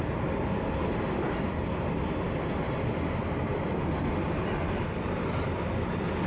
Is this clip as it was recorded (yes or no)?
yes